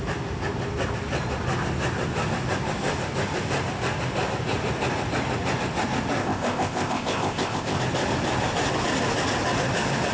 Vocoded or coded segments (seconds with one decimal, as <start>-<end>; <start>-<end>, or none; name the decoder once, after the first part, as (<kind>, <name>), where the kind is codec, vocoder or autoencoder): 6.2-7.8 (codec, ZipCodec)